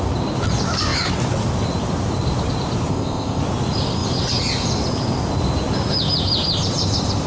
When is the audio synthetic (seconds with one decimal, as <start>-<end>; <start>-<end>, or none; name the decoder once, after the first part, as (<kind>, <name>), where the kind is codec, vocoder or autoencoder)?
2.9-3.4 (codec, ZipCodec)